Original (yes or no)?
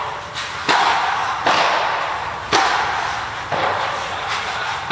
yes